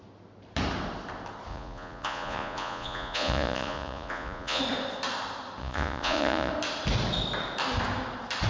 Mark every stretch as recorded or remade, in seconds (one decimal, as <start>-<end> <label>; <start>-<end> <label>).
0.0-1.5 recorded; 1.5-4.6 remade; 4.6-5.6 recorded; 5.6-6.5 remade; 6.5-8.5 recorded

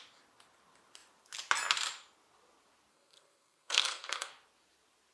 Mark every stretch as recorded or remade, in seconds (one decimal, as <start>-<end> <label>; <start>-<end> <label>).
0.0-2.9 recorded; 2.9-4.3 remade; 4.3-5.1 recorded

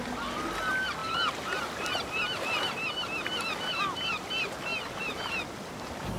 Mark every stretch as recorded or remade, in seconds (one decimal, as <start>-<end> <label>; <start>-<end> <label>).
0.0-1.0 recorded; 1.0-4.3 remade; 4.3-6.2 recorded